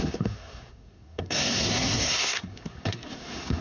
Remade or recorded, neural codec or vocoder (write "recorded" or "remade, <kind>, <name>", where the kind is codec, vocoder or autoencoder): remade, codec, SNAC